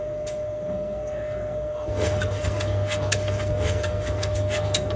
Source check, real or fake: fake